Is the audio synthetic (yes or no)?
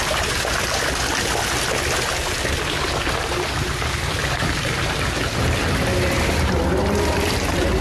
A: no